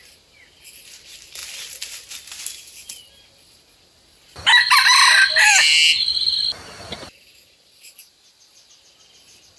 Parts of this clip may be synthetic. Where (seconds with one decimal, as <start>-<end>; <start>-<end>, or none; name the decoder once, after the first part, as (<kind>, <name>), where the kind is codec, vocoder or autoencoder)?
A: none